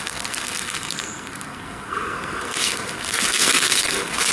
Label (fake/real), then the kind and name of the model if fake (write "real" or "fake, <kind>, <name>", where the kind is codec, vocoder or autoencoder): fake, codec, SNAC